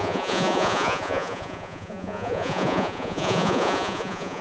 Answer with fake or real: fake